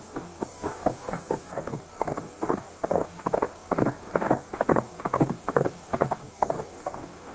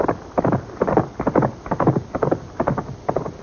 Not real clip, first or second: first